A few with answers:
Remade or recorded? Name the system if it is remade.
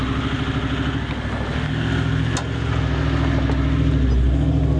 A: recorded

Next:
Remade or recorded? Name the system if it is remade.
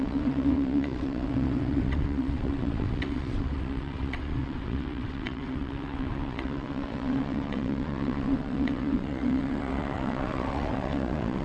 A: remade, vocoder, WaveNeXt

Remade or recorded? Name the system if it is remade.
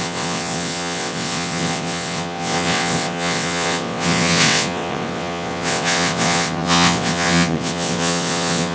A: remade, vocoder, WaveNeXt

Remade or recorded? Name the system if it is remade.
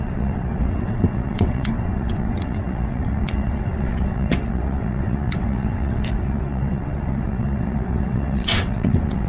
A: remade, vocoder, WaveNeXt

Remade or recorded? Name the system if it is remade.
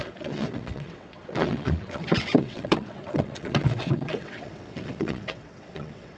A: remade, vocoder, WaveNeXt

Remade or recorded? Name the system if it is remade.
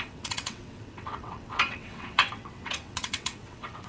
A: remade, vocoder, WaveNeXt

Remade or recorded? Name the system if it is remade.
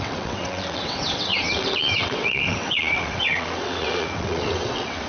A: remade, vocoder, WaveNeXt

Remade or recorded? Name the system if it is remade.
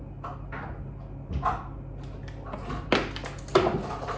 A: recorded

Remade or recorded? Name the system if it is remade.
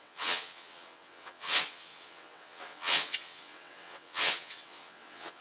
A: remade, vocoder, WaveNeXt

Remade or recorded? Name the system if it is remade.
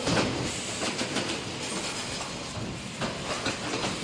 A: recorded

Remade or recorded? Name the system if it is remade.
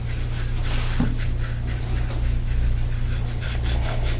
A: recorded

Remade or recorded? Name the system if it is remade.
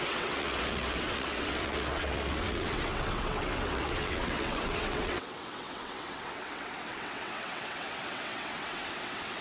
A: remade, vocoder, WaveNeXt